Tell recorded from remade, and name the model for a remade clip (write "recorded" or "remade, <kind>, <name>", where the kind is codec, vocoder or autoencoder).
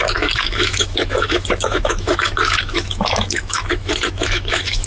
remade, autoencoder, DAC-VAE